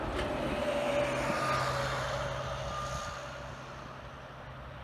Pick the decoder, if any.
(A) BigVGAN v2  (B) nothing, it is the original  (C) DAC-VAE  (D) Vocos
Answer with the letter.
B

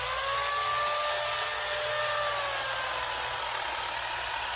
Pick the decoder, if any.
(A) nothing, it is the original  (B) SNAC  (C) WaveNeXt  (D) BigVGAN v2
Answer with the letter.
A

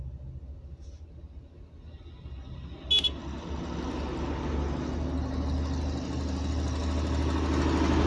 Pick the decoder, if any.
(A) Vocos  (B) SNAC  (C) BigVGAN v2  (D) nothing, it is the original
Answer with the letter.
D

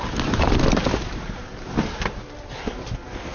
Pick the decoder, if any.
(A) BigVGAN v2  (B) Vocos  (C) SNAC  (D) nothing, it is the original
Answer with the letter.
D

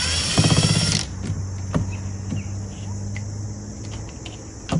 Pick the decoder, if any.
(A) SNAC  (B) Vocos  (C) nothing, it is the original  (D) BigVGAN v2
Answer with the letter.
C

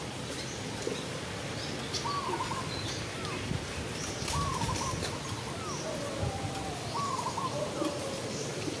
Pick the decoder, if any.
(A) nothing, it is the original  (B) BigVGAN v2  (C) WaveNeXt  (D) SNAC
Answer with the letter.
A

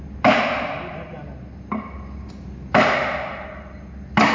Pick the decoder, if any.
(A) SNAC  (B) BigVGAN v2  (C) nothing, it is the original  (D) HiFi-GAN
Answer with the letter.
C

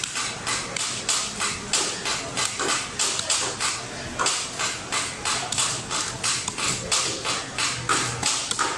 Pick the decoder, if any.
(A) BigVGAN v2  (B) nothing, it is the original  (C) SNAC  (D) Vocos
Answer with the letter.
B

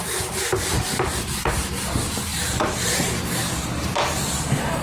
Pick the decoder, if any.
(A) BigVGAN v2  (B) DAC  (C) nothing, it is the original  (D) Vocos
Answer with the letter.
A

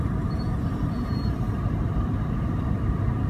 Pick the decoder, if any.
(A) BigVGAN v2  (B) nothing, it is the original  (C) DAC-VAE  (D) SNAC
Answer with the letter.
A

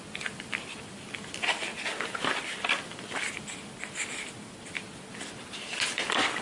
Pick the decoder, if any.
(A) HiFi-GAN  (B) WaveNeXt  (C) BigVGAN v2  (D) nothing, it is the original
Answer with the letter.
D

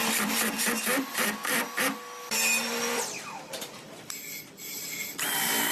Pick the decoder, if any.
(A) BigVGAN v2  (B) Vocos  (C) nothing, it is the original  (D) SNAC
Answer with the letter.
A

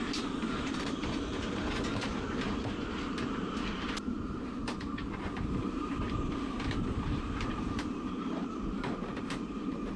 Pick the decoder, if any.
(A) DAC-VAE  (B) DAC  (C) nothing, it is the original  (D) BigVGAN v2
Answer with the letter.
D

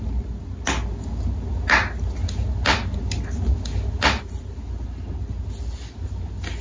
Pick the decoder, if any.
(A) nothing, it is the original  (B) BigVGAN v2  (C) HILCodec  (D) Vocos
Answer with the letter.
A